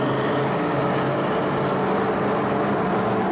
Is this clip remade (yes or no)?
no